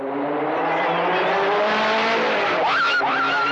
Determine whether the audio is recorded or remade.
remade